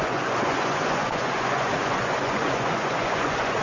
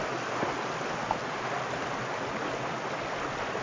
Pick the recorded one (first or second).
second